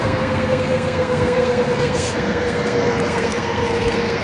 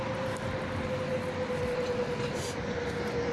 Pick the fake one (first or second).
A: first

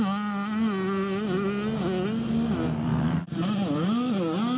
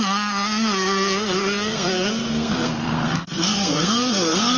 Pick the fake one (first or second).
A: second